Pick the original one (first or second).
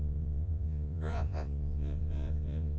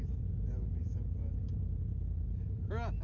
second